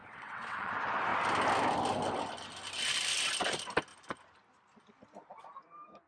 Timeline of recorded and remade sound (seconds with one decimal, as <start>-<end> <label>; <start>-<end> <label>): 0.0-0.7 remade; 0.7-6.1 recorded